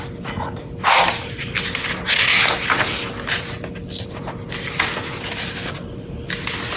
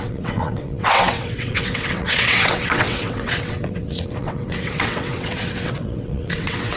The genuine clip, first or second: first